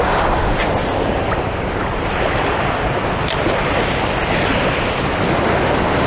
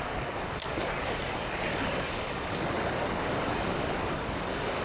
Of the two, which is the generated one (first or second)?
second